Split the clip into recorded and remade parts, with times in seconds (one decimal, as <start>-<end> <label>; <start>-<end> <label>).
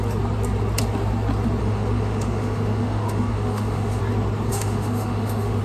0.0-1.6 recorded; 1.6-4.0 remade; 4.0-4.5 recorded; 4.5-5.6 remade